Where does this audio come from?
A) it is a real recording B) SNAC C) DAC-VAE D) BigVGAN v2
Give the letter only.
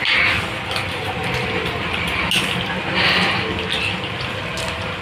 A